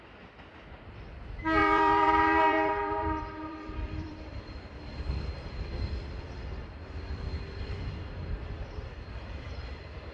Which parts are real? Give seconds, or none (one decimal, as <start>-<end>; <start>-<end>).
0.0-1.6; 6.7-7.3